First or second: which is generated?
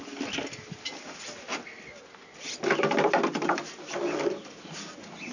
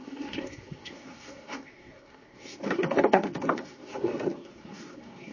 second